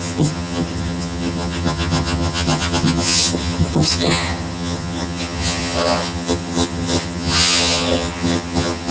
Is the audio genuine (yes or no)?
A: no